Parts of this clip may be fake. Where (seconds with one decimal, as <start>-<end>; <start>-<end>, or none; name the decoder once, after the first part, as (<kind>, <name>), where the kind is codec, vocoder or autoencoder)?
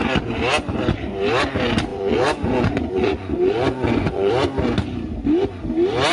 1.9-4.3 (vocoder, Vocos)